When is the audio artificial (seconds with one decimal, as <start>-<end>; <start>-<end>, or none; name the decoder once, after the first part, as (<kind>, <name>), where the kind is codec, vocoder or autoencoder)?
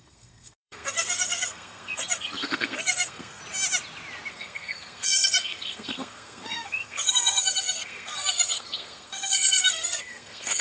0.0-3.4 (codec, SNAC); 4.3-10.6